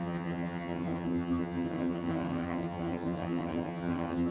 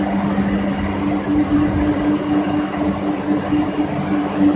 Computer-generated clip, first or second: first